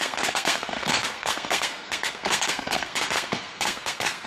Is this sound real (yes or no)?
no